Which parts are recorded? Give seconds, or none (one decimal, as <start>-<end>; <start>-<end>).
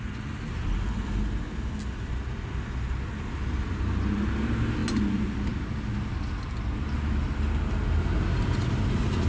0.0-9.3